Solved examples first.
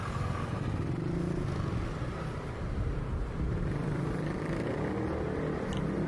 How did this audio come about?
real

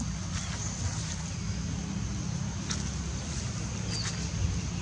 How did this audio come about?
real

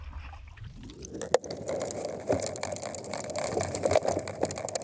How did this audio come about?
real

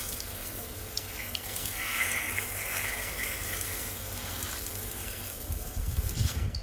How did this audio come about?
fake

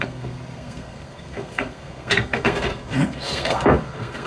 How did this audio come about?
fake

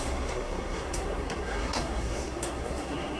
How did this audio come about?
fake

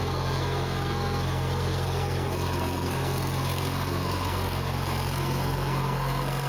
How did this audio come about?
fake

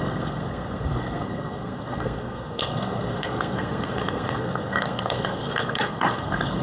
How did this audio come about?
fake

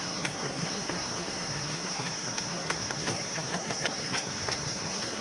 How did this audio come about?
fake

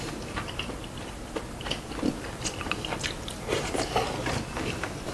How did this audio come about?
real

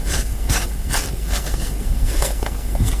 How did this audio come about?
fake